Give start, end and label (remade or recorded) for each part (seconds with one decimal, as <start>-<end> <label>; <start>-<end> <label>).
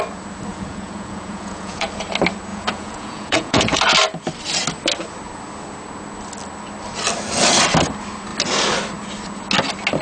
0.0-0.5 recorded; 0.5-1.9 remade; 1.9-2.5 recorded; 2.5-3.8 remade; 3.8-10.0 recorded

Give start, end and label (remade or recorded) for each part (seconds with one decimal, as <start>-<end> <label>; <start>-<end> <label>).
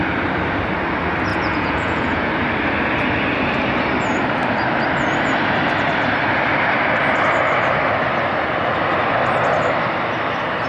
0.0-1.3 recorded; 1.3-2.3 remade; 2.3-10.7 recorded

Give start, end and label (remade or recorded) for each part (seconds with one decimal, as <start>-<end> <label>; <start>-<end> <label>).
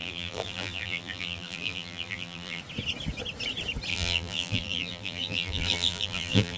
0.0-2.6 remade; 2.6-3.9 recorded; 3.9-6.6 remade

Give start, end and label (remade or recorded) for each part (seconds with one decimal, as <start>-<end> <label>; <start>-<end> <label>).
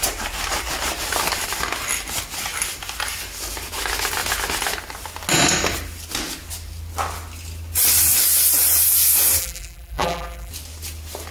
0.0-9.4 recorded; 9.4-10.5 remade; 10.5-11.3 recorded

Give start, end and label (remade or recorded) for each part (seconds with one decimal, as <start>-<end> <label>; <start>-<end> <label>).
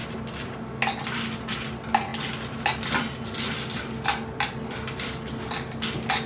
0.0-6.3 recorded